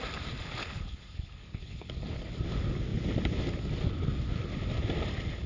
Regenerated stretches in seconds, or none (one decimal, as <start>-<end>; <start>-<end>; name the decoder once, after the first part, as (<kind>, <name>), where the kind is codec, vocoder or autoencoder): 0.6-1.9 (codec, HILCodec)